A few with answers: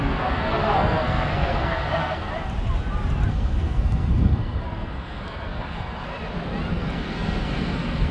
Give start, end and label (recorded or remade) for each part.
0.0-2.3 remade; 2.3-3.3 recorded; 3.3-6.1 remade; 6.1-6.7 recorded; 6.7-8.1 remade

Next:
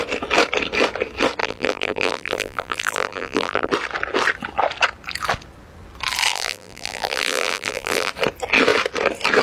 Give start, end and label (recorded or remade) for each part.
0.0-1.4 recorded; 1.4-3.7 remade; 3.7-6.3 recorded; 6.3-8.1 remade; 8.1-9.4 recorded

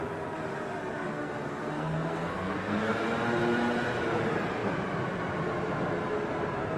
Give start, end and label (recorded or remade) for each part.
0.0-1.0 recorded; 1.0-2.9 remade; 2.9-6.8 recorded

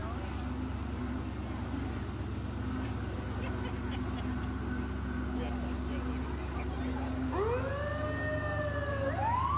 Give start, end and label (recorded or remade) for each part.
0.0-9.6 recorded